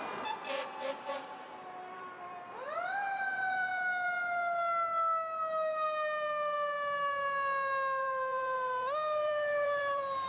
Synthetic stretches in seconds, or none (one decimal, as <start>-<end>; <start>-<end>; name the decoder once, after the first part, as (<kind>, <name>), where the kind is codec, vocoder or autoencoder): 0.0-3.7 (vocoder, BigVGAN v2); 8.0-10.3